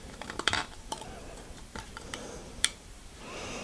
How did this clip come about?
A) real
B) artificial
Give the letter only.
B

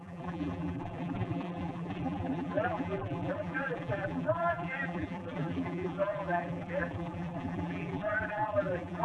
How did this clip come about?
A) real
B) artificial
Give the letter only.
B